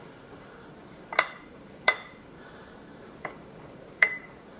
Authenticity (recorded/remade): remade